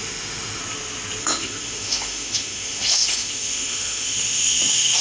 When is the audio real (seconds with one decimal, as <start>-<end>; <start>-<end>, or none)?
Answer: 0.6-1.2